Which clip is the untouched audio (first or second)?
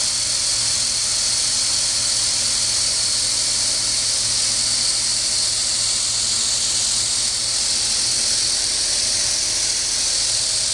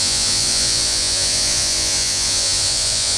first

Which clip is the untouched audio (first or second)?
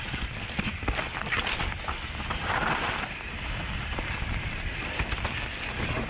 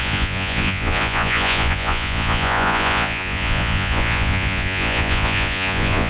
first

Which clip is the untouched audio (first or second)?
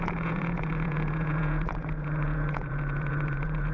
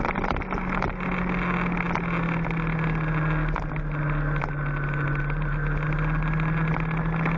second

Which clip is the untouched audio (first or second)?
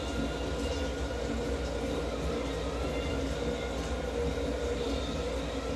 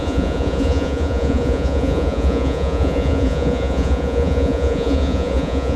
first